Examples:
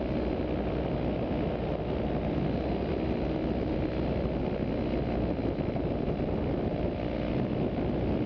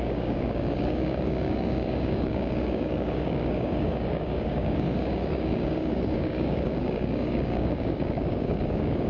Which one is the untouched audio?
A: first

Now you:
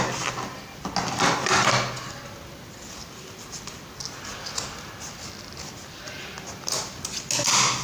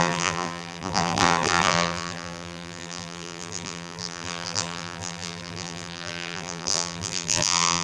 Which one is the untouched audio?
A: first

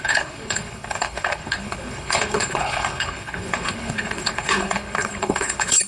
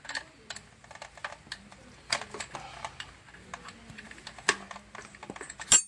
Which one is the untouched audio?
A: second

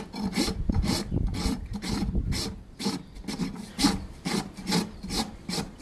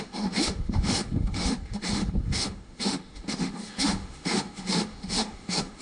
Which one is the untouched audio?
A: first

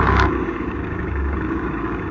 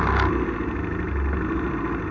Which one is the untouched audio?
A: second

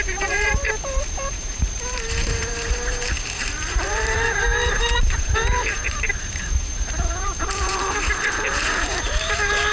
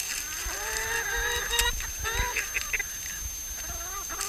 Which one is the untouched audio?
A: second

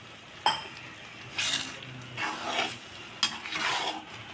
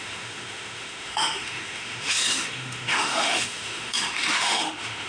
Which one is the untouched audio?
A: first